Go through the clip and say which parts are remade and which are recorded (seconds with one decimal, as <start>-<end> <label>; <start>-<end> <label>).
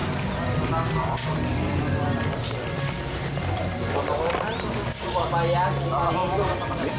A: 0.0-1.5 recorded; 1.5-4.3 remade; 4.3-6.2 recorded; 6.2-7.0 remade